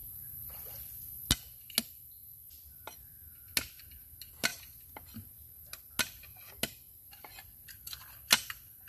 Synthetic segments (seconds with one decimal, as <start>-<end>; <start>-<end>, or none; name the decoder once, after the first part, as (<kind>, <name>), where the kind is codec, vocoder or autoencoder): none